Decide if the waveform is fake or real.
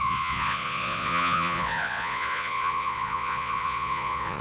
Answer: fake